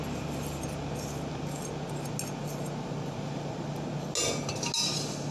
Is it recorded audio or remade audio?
recorded